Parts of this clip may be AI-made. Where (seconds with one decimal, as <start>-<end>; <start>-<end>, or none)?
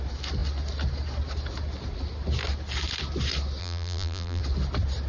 3.6-4.4